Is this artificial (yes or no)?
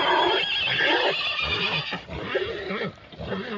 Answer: no